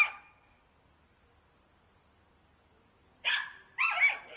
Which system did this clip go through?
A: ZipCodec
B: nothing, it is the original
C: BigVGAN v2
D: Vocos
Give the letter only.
B